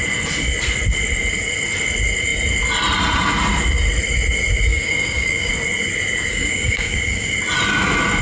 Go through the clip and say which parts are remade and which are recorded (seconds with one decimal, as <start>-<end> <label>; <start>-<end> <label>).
0.0-4.7 recorded; 4.7-5.5 remade; 5.5-6.3 recorded; 6.3-7.3 remade; 7.3-8.2 recorded